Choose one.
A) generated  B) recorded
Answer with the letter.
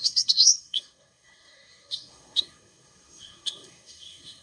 A